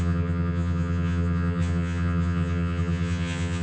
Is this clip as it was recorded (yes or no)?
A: no